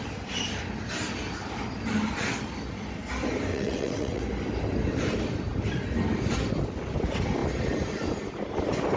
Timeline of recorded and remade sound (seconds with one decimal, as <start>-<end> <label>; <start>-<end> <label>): 0.0-3.5 recorded; 3.5-4.2 remade; 4.2-9.0 recorded

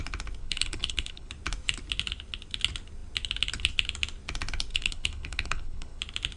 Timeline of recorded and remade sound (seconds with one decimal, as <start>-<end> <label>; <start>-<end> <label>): 0.0-0.4 recorded; 0.4-1.3 remade; 1.3-4.7 recorded; 4.7-6.0 remade; 6.0-6.4 recorded

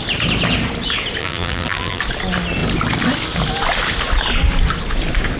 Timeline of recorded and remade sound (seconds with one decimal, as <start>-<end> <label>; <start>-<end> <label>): 0.0-1.2 recorded; 1.2-2.0 remade; 2.0-5.4 recorded

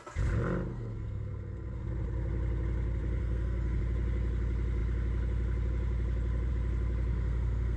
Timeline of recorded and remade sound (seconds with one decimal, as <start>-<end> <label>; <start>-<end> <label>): 0.0-0.7 recorded; 0.7-1.8 remade; 1.8-3.2 recorded; 3.2-3.8 remade; 3.8-7.1 recorded; 7.1-7.8 remade

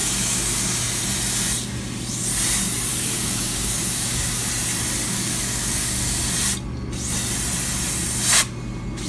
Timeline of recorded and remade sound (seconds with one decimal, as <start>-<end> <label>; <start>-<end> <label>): 0.0-0.8 remade; 0.8-2.9 recorded; 2.9-4.5 remade; 4.5-5.0 recorded; 5.0-6.2 remade; 6.2-9.1 recorded

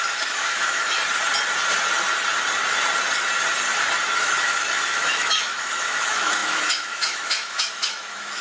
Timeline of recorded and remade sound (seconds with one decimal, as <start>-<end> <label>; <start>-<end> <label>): 0.0-1.0 remade; 1.0-4.2 recorded; 4.2-8.4 remade

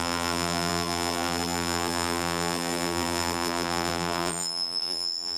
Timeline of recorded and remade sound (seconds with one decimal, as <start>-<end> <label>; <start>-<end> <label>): 0.0-5.4 remade

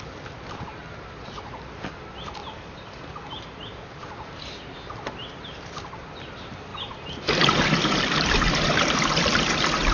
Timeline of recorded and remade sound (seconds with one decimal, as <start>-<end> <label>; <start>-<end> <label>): 0.0-2.4 recorded; 2.4-3.1 remade; 3.1-6.7 recorded; 6.7-8.0 remade; 8.0-9.9 recorded